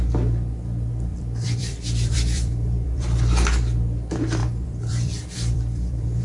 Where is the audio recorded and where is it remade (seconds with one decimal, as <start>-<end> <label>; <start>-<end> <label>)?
0.0-1.1 recorded; 1.1-3.2 remade; 3.2-4.4 recorded; 4.4-6.2 remade